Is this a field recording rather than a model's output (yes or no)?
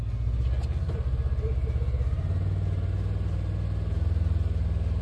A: yes